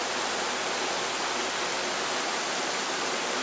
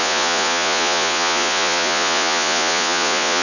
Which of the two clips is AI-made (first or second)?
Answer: second